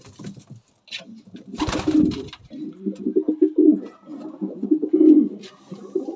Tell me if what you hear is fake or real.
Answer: real